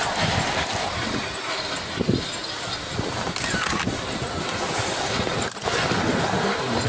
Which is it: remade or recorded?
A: recorded